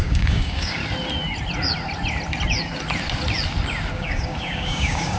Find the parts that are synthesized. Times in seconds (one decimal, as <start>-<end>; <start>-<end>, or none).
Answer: 0.0-0.8; 3.9-5.2